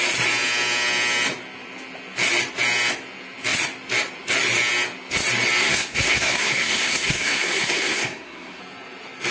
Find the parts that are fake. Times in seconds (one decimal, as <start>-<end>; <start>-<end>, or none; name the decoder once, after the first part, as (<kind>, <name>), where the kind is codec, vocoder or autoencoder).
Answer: 5.6-8.6 (codec, SNAC)